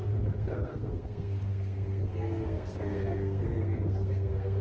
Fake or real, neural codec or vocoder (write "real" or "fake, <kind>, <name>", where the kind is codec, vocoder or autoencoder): fake, codec, SNAC